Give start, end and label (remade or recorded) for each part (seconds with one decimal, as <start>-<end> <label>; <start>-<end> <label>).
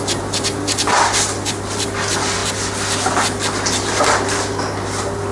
0.0-5.3 recorded